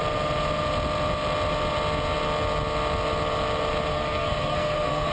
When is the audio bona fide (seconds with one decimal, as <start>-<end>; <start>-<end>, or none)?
0.0-3.9